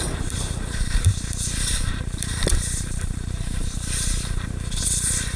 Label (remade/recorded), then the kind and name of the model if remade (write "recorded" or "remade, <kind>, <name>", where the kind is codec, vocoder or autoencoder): remade, vocoder, BigVGAN v2